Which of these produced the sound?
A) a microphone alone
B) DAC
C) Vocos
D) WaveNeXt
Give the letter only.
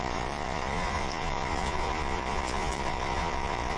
C